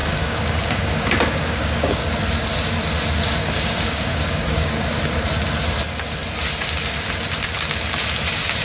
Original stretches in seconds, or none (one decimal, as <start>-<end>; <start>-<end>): 2.0-3.4; 4.9-8.6

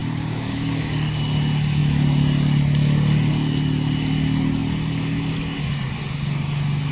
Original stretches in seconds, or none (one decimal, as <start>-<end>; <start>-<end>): 1.2-6.9

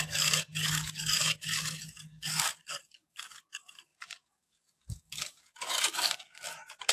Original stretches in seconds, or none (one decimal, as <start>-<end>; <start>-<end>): none

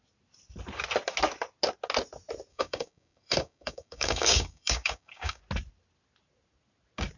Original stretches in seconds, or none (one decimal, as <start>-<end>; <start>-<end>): 0.0-2.5; 5.4-7.2

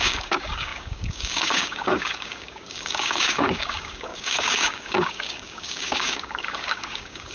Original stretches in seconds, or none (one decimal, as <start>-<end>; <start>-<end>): none

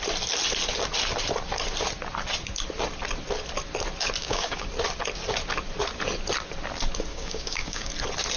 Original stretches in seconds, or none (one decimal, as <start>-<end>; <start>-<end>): 0.0-4.2; 4.7-7.1; 7.9-8.4

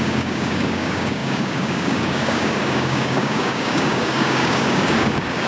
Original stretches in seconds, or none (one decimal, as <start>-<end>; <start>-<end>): none